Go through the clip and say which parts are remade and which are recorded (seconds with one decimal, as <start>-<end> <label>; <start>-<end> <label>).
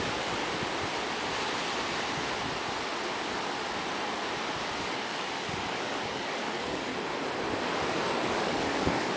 0.0-0.4 remade; 0.4-4.8 recorded; 4.8-6.9 remade; 6.9-7.6 recorded; 7.6-9.2 remade